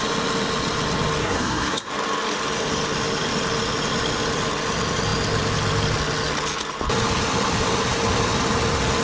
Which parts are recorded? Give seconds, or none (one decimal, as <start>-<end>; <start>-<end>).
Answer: 0.0-1.2; 1.9-9.0